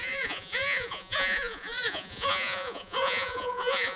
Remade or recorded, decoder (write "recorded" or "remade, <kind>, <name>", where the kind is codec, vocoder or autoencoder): remade, vocoder, Vocos